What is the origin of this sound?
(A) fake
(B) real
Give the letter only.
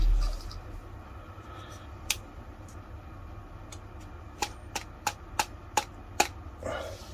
B